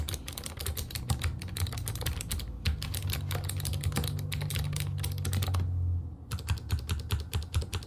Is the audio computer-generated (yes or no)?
no